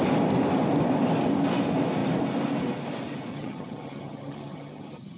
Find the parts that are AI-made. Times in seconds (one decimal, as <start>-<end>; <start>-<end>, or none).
3.3-5.2